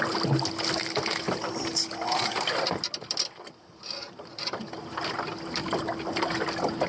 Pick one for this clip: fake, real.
fake